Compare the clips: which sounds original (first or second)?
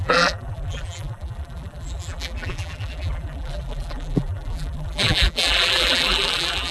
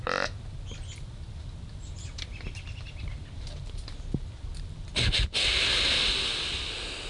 second